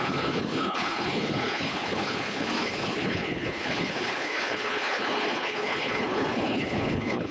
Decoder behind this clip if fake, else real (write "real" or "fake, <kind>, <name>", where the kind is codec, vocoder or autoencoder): fake, codec, HILCodec